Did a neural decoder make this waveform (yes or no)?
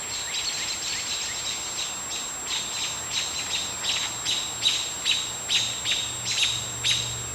no